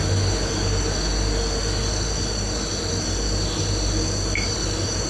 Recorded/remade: recorded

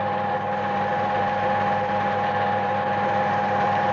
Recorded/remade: recorded